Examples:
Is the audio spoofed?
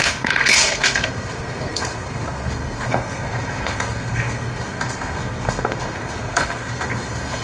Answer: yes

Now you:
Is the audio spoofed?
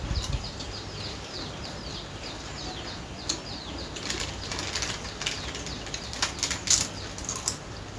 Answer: no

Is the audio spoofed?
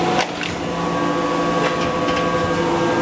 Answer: no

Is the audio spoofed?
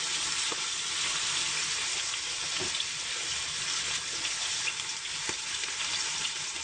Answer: no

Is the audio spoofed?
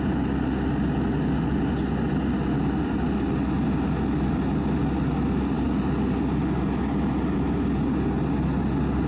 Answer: no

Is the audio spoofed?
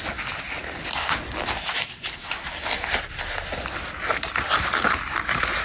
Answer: no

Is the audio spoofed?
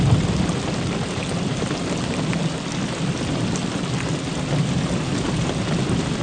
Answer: no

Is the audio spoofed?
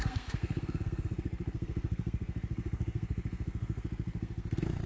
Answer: yes